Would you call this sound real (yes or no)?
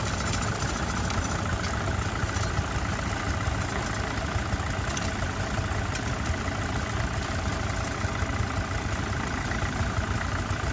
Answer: yes